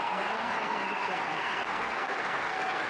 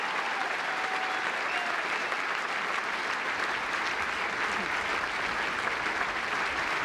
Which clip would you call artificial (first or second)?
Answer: first